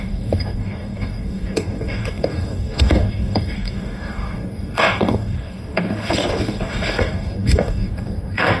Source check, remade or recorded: remade